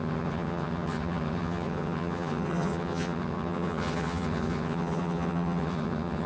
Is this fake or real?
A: fake